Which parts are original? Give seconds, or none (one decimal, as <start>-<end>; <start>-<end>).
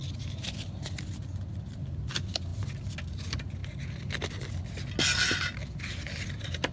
0.0-6.7